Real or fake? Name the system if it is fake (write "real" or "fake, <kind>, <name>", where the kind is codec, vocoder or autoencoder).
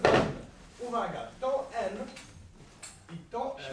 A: real